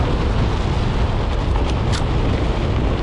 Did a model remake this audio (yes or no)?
no